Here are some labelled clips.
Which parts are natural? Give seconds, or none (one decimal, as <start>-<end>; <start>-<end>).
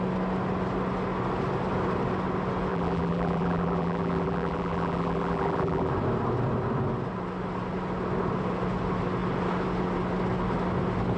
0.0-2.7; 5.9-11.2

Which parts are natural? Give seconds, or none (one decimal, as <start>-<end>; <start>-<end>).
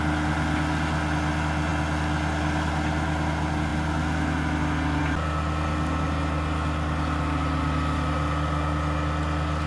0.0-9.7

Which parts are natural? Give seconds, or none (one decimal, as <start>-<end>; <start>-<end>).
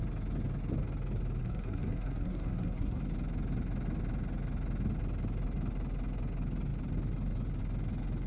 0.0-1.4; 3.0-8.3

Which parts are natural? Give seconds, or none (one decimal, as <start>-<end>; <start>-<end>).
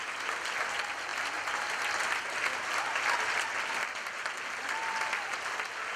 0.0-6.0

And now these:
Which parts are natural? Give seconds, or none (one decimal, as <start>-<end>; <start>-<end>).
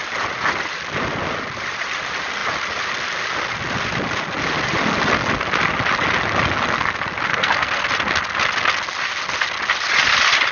0.0-7.3; 7.8-10.5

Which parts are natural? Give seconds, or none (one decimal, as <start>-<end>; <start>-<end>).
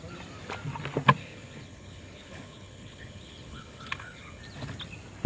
0.0-1.2; 4.4-5.3